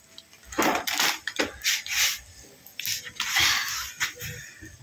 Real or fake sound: real